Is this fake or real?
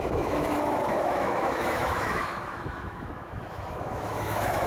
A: fake